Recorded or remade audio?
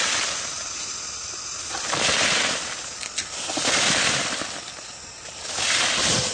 recorded